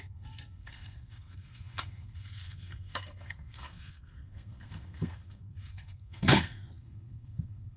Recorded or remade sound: remade